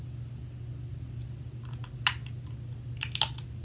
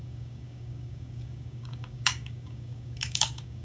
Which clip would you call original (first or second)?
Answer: first